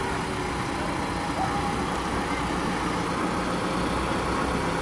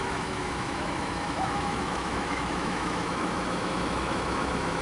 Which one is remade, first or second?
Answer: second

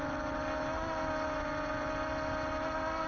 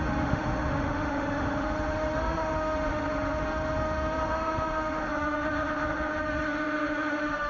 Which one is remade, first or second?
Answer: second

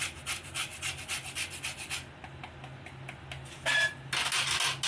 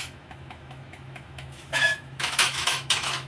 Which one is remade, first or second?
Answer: second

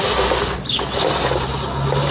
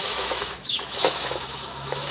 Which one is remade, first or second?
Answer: second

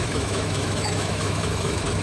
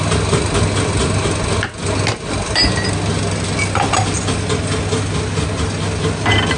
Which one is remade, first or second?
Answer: first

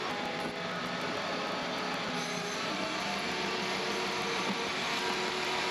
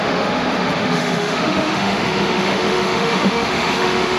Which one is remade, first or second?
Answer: second